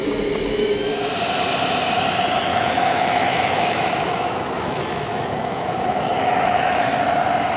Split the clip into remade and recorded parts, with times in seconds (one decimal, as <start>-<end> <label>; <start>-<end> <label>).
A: 0.0-2.5 recorded; 2.5-7.0 remade; 7.0-7.6 recorded

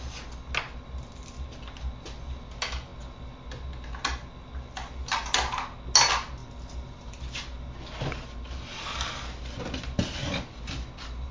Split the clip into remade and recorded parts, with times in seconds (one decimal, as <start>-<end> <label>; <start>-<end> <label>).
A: 0.0-11.3 recorded

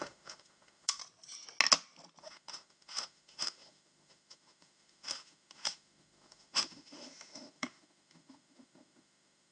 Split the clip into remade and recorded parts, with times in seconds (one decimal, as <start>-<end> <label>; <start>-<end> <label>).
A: 0.0-1.0 remade; 1.0-2.2 recorded; 2.2-9.5 remade

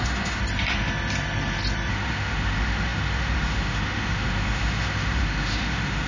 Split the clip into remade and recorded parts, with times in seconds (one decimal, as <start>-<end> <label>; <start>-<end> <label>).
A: 0.0-0.4 remade; 0.4-1.9 recorded; 1.9-6.1 remade